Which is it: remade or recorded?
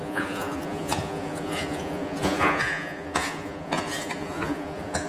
remade